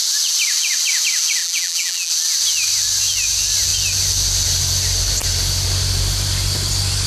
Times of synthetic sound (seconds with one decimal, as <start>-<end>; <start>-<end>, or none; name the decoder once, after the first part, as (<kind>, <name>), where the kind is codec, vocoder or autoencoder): 1.4-2.1 (vocoder, BigVGAN v2)